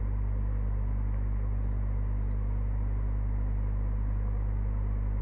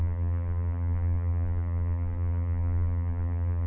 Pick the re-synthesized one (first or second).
second